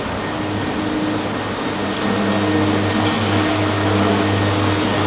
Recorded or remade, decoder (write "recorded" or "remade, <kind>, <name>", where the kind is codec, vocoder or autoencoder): recorded